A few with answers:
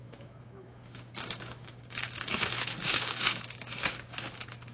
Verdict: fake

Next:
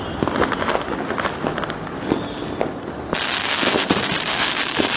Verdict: real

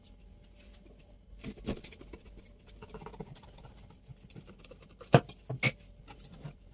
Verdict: real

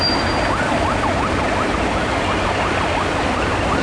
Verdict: real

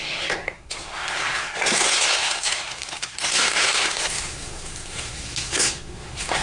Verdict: fake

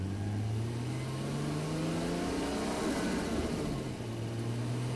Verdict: real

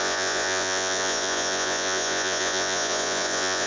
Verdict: fake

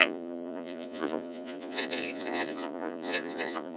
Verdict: fake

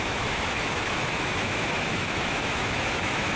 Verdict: fake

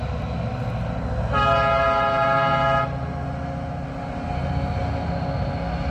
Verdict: real